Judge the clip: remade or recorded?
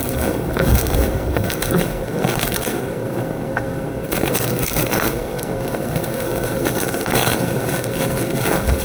remade